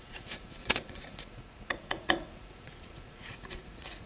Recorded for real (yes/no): no